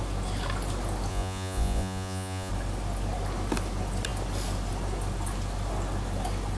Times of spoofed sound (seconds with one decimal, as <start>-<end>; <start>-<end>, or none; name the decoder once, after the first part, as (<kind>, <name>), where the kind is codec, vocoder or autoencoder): 1.1-2.5 (vocoder, Vocos)